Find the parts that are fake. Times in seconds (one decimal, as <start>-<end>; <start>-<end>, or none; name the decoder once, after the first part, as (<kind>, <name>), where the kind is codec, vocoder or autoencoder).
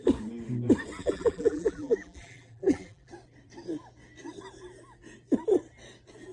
1.0-3.1 (vocoder, BigVGAN v2)